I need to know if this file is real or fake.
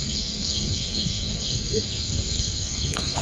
fake